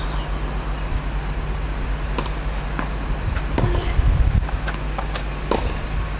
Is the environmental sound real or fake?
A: real